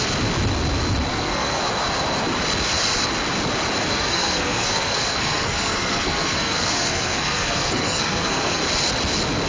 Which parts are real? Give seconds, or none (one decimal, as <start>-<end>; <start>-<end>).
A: 0.0-1.1; 1.6-3.9; 8.6-9.5